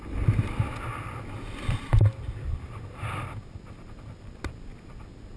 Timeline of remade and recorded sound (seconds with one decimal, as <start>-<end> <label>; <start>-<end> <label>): 0.0-5.4 recorded